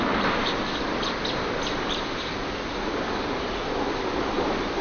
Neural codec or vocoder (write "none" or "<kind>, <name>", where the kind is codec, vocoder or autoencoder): none